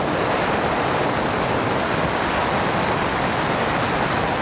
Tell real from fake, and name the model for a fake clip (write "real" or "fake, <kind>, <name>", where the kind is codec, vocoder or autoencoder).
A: real